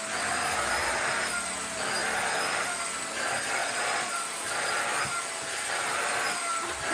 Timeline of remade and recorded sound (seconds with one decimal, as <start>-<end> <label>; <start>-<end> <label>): 0.0-3.6 recorded; 3.6-4.8 remade; 4.8-6.9 recorded